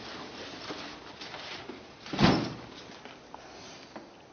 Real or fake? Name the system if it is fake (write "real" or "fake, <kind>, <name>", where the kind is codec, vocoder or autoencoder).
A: real